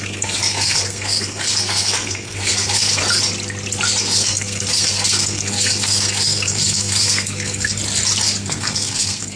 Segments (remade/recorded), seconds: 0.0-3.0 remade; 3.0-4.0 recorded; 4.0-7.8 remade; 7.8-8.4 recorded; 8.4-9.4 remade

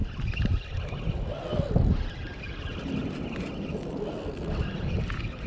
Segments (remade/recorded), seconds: 0.0-5.5 recorded

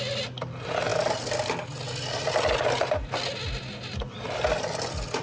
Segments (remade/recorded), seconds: 0.0-5.2 recorded

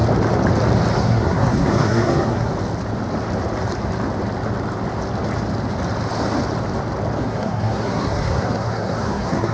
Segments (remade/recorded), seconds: 0.0-1.0 recorded; 1.0-2.5 remade; 2.5-7.2 recorded; 7.2-9.5 remade

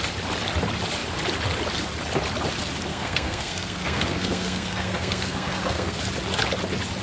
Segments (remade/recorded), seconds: 0.0-2.9 recorded; 2.9-6.0 remade; 6.0-7.0 recorded